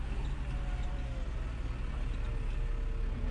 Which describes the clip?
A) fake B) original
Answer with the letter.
B